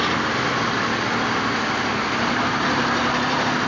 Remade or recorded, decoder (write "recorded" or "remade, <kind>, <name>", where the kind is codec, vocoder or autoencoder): recorded